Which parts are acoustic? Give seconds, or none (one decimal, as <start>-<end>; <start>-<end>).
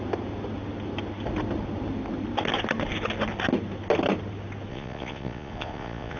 0.0-4.7